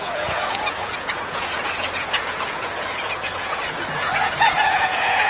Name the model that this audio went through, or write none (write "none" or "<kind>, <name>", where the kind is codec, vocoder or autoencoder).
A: vocoder, Vocos